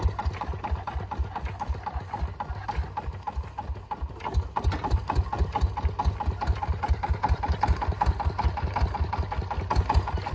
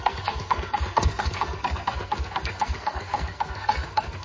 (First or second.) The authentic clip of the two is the first